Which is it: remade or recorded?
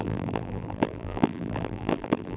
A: remade